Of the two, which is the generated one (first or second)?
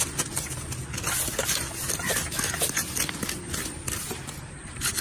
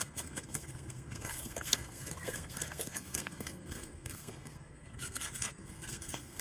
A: second